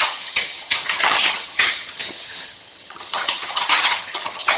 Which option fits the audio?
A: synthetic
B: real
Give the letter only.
A